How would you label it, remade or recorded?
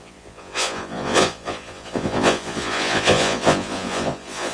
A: remade